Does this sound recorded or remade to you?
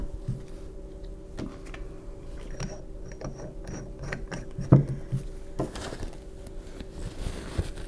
recorded